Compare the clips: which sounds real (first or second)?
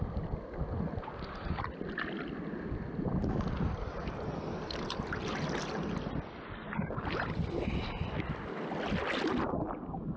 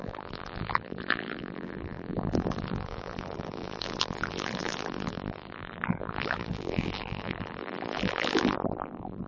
first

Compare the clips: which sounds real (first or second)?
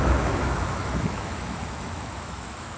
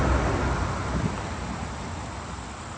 second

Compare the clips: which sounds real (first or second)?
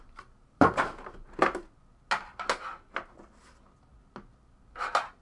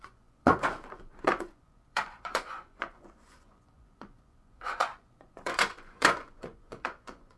first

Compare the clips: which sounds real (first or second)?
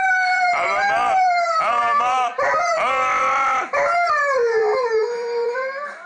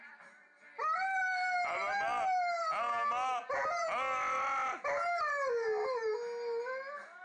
second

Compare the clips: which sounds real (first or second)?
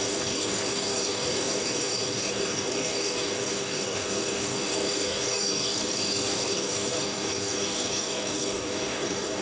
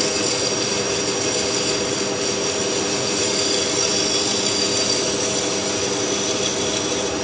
second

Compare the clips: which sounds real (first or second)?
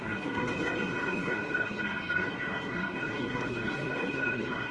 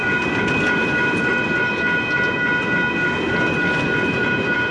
second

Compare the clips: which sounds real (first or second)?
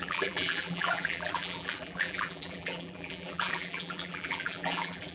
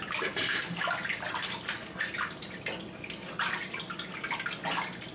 second